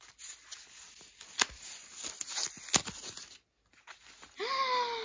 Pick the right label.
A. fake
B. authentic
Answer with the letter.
B